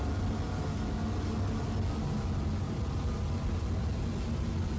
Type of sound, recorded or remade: recorded